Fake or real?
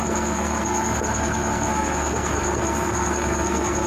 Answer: fake